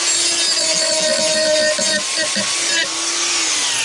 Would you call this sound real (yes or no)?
yes